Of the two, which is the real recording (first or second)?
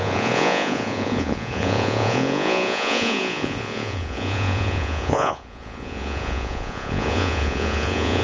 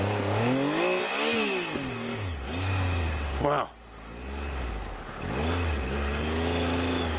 second